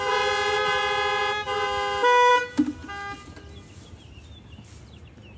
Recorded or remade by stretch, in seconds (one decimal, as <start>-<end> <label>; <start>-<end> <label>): 0.0-5.4 recorded